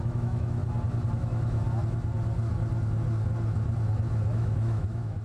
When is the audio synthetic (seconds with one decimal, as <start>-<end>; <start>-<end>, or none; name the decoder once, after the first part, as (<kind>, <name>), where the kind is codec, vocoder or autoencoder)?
0.0-0.6 (autoencoder, DAC-VAE); 1.1-1.6; 4.3-5.2